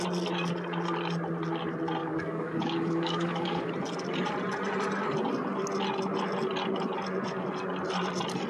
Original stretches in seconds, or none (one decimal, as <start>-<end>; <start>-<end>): 0.0-2.0; 3.7-8.5